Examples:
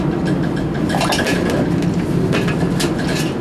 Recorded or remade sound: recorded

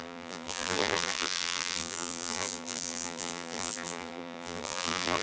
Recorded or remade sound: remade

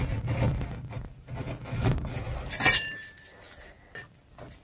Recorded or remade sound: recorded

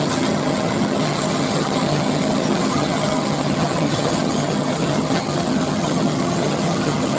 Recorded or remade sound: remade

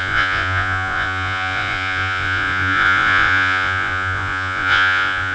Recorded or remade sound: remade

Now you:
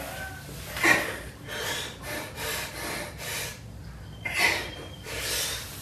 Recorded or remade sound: recorded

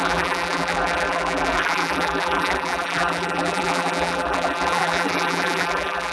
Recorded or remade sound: remade